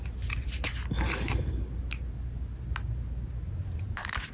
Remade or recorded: recorded